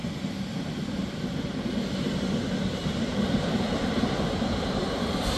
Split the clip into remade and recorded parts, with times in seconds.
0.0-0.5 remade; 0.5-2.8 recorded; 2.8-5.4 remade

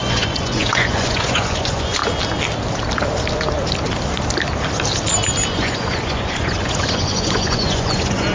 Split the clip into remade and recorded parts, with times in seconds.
0.0-2.0 remade; 2.0-5.5 recorded; 5.5-8.3 remade

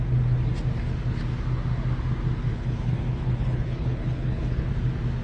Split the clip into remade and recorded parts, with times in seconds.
0.0-2.5 recorded; 2.5-4.7 remade; 4.7-5.2 recorded

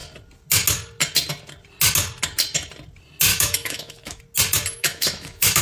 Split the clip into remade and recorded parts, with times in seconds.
0.0-3.3 recorded; 3.3-4.2 remade; 4.2-4.8 recorded; 4.8-5.6 remade

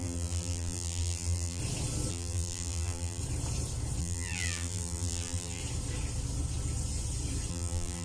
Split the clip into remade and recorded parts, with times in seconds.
0.0-1.6 remade; 1.6-2.1 recorded; 2.1-3.2 remade; 3.2-4.0 recorded; 4.0-5.6 remade; 5.6-7.5 recorded; 7.5-8.0 remade

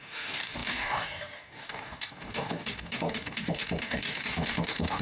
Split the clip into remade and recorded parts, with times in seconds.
0.0-5.0 remade

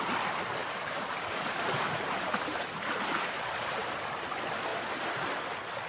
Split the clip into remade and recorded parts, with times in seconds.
0.0-0.6 recorded; 0.6-3.0 remade; 3.0-3.8 recorded; 3.8-4.3 remade; 4.3-4.7 recorded; 4.7-5.3 remade; 5.3-5.9 recorded

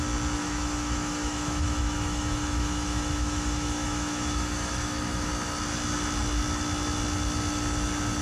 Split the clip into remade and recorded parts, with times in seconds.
0.0-0.4 recorded; 0.4-5.3 remade; 5.3-8.2 recorded